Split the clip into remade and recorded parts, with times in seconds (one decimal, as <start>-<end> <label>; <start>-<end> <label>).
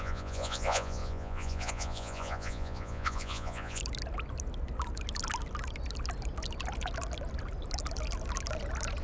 0.0-3.8 remade; 3.8-9.0 recorded